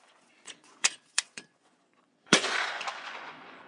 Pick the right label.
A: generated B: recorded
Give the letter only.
A